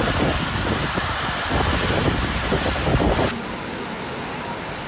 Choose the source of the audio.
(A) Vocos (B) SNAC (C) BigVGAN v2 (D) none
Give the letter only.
D